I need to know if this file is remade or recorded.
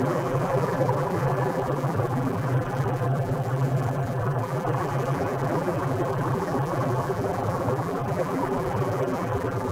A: remade